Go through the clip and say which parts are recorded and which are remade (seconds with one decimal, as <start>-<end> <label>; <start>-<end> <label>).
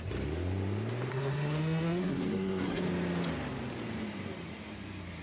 0.0-1.1 recorded; 1.1-2.8 remade; 2.8-5.2 recorded